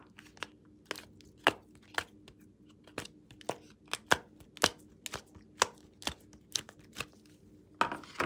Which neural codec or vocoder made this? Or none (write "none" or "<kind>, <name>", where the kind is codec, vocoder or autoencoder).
none